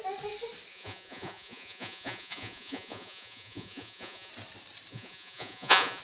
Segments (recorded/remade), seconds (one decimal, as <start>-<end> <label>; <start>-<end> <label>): 0.0-0.7 recorded; 0.7-4.3 remade; 4.3-4.9 recorded; 4.9-6.0 remade